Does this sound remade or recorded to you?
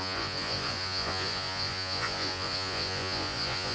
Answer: remade